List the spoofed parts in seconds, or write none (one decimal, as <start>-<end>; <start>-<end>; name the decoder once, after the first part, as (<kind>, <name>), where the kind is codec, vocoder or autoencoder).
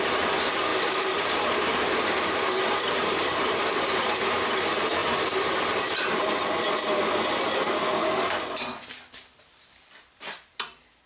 0.7-4.3 (vocoder, BigVGAN v2)